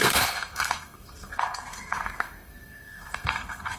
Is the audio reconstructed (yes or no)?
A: yes